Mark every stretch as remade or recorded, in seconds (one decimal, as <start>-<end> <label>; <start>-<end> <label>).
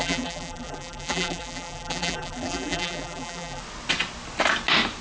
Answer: 0.0-3.6 remade; 3.6-5.0 recorded